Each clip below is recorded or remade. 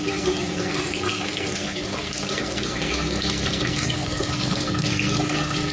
remade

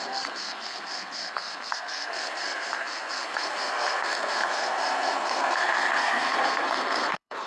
remade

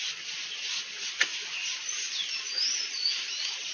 recorded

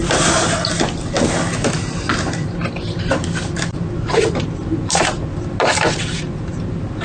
recorded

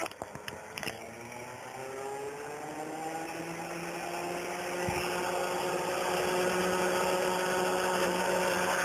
recorded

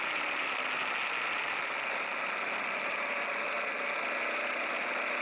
recorded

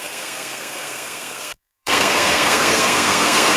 remade